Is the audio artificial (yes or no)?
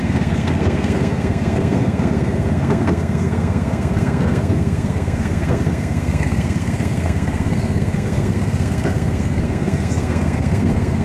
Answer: yes